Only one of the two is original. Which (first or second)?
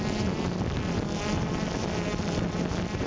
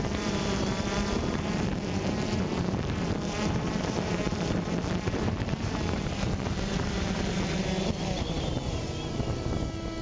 first